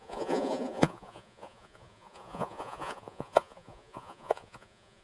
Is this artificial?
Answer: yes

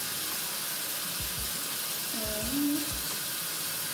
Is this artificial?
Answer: no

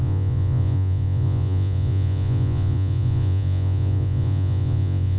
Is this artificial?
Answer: yes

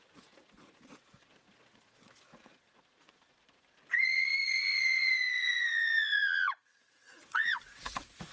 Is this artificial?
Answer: yes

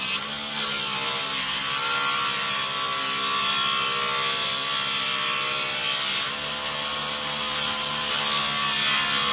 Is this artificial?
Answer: no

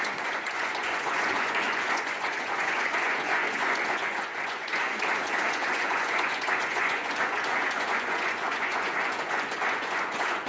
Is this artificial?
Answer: yes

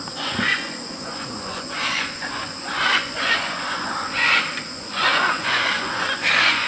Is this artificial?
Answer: yes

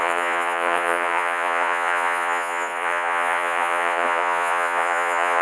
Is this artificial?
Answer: yes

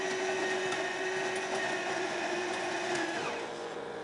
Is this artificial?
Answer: yes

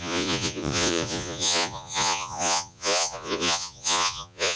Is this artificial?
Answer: yes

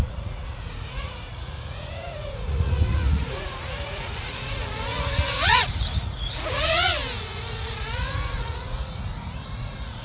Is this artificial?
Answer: yes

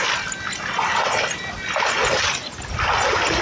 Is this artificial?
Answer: no